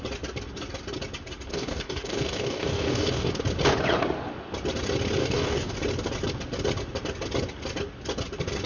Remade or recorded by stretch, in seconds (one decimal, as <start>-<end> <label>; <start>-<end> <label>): 0.0-1.5 recorded; 1.5-3.4 remade; 3.4-5.2 recorded; 5.2-5.7 remade; 5.7-8.7 recorded